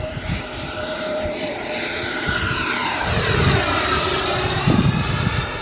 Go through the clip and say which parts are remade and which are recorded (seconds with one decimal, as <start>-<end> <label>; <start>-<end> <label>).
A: 0.0-5.6 remade